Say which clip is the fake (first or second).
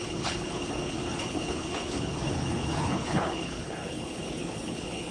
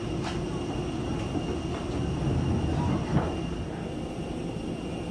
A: first